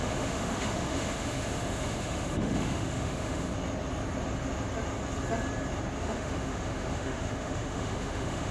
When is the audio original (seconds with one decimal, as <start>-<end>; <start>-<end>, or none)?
3.5-6.0